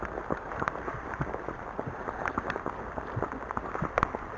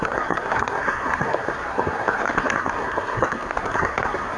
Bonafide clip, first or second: first